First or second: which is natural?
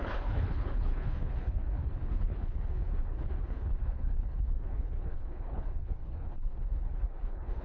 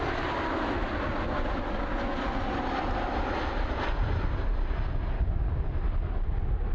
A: second